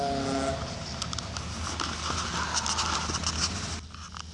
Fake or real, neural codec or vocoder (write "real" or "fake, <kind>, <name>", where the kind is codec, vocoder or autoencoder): real